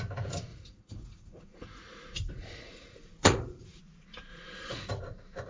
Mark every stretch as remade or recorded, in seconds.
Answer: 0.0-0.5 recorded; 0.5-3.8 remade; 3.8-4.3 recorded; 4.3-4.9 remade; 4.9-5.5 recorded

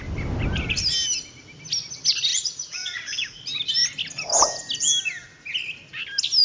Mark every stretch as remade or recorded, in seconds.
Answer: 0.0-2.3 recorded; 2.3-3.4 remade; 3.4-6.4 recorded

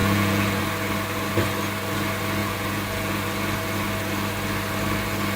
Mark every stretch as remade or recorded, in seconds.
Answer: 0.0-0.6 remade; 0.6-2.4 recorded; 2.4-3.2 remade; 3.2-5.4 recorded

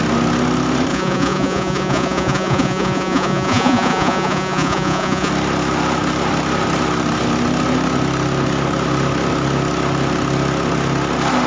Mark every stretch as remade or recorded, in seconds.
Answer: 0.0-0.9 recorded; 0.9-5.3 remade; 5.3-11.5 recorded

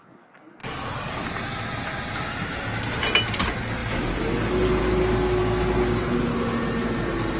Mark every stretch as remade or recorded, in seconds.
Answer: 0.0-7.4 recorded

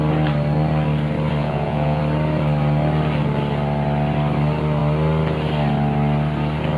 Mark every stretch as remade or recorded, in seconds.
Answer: 0.0-1.4 recorded; 1.4-2.0 remade; 2.0-6.8 recorded